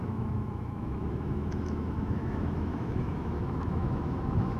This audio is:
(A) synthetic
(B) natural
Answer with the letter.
A